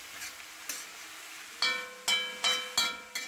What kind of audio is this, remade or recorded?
recorded